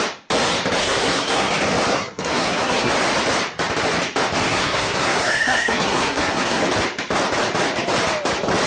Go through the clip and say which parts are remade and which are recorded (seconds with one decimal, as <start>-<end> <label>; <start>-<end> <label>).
0.0-0.8 recorded; 0.8-1.5 remade; 1.5-1.9 recorded; 1.9-2.9 remade; 2.9-4.5 recorded; 4.5-6.6 remade; 6.6-8.7 recorded